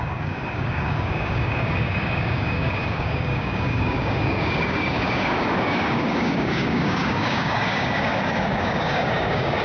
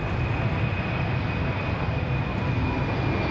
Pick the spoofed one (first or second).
first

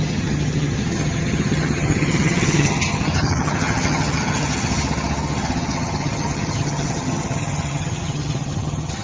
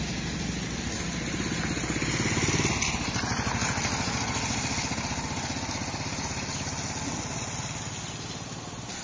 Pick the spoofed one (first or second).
first